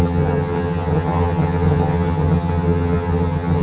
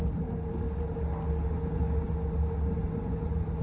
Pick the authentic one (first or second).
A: second